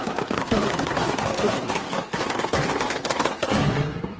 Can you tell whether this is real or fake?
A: fake